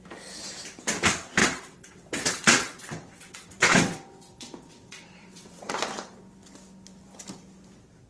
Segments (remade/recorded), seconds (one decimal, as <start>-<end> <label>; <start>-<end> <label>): 0.0-1.4 recorded; 1.4-5.7 remade; 5.7-8.1 recorded